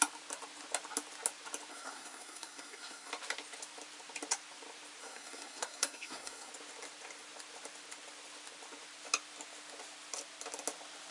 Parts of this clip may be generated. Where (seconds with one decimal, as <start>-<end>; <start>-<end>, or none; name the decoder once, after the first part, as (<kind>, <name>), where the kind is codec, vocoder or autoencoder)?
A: 1.7-3.1 (codec, SNAC); 5.0-6.5